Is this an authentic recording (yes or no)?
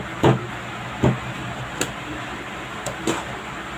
yes